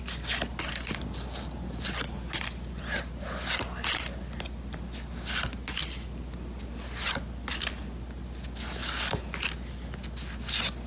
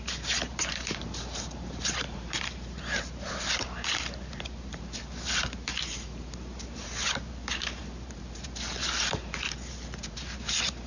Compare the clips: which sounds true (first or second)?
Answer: first